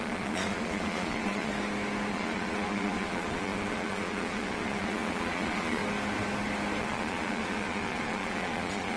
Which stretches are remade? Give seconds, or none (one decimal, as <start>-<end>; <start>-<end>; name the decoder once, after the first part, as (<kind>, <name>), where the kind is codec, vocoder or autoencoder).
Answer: 0.0-1.5 (vocoder, Vocos); 2.1-5.8; 6.8-9.0